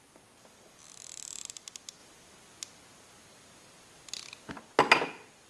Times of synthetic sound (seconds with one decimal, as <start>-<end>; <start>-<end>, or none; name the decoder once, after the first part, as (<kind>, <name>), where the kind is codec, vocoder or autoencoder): none